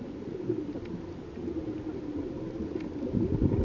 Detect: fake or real real